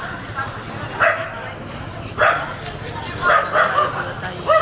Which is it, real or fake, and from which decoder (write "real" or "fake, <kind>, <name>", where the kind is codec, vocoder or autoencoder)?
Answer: real